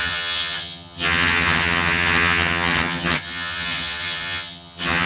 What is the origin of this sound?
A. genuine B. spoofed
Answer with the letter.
B